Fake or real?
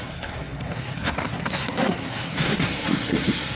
fake